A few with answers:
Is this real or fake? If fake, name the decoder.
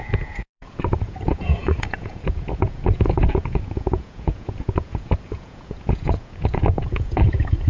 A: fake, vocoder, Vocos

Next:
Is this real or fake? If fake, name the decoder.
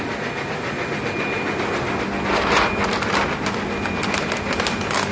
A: real